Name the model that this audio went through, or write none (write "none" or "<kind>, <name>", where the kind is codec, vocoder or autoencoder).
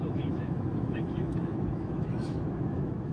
autoencoder, DAC-VAE